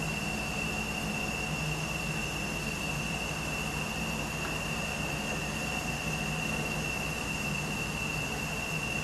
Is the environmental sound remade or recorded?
recorded